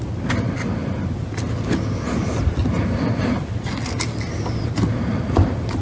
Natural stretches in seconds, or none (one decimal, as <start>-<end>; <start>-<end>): 0.0-5.8